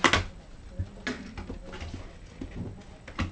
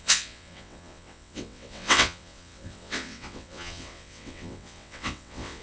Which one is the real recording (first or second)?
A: first